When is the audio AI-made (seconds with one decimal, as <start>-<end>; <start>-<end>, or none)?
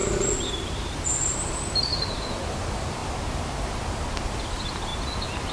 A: 1.2-1.9; 2.5-3.0; 4.1-4.9